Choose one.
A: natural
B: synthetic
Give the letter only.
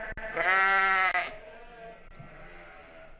A